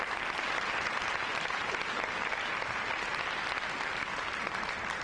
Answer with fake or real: real